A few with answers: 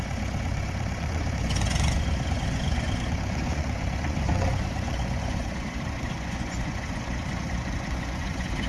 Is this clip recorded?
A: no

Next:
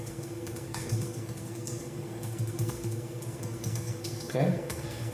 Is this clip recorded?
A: no